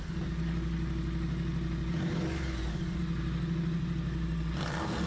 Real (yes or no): yes